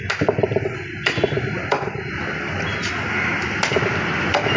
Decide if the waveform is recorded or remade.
recorded